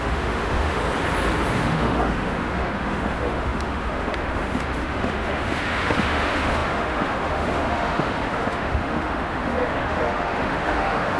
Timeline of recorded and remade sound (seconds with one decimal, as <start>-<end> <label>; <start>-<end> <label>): 0.0-0.8 remade; 0.8-1.5 recorded; 1.5-11.2 remade